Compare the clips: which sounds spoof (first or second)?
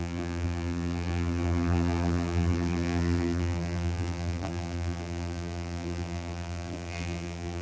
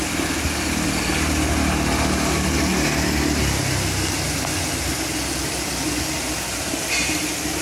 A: first